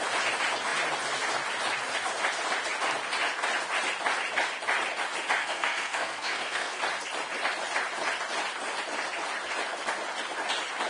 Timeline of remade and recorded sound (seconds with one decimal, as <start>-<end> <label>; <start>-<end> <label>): 0.0-5.4 recorded; 5.4-6.8 remade; 6.8-10.9 recorded